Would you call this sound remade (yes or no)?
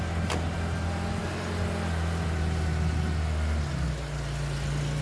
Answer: no